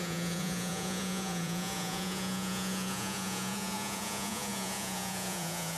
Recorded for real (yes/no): no